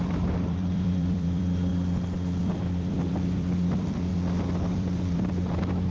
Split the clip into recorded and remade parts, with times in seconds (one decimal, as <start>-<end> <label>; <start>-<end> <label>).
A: 0.0-1.7 remade; 1.7-2.4 recorded; 2.4-4.1 remade; 4.1-4.7 recorded; 4.7-5.9 remade